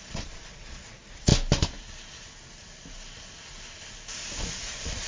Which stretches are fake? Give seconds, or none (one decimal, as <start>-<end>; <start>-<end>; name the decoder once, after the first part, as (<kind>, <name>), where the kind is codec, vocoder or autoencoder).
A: 0.0-1.3 (vocoder, Vocos); 4.4-5.1